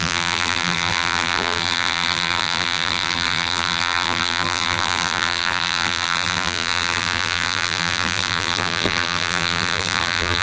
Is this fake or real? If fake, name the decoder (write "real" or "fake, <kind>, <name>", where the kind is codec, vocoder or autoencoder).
fake, vocoder, BigVGAN v2